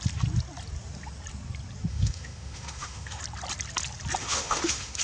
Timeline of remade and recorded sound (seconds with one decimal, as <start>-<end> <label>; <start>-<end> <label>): 0.0-1.9 recorded; 1.9-3.2 remade; 3.2-4.2 recorded; 4.2-5.0 remade